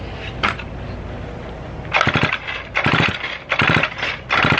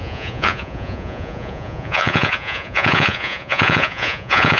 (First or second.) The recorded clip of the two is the first